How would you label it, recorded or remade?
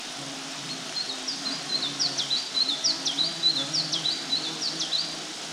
recorded